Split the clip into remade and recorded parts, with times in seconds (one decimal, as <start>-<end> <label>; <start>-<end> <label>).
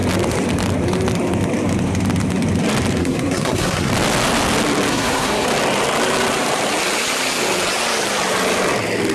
0.0-3.0 recorded; 3.0-3.9 remade; 3.9-4.9 recorded; 4.9-5.5 remade; 5.5-9.1 recorded